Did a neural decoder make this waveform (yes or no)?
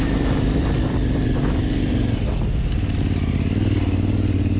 no